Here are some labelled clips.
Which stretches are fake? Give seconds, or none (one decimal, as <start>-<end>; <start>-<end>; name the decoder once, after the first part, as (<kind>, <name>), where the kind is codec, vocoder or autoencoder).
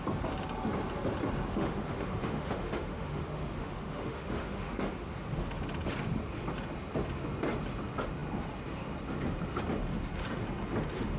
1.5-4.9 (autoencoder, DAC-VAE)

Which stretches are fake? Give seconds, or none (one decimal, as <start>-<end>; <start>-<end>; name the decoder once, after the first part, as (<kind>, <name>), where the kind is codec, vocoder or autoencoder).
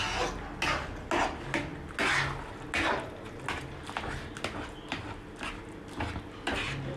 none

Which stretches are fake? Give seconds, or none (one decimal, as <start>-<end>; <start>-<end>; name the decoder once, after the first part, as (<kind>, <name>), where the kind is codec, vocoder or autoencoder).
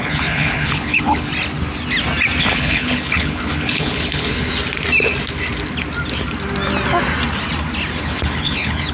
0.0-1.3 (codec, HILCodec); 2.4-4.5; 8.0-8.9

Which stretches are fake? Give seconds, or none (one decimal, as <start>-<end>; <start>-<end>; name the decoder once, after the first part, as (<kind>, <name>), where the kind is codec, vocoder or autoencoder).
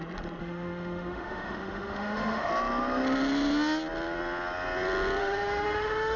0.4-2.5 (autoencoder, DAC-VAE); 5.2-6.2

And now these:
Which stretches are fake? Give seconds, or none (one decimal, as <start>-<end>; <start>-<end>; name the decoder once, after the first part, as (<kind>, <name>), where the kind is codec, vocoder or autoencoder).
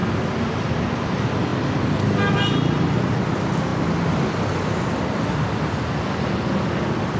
none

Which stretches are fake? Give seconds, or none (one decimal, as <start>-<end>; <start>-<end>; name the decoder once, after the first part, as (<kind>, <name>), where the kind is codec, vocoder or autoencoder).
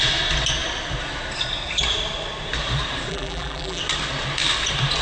3.1-3.8 (vocoder, BigVGAN v2)